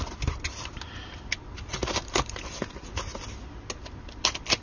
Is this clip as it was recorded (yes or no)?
yes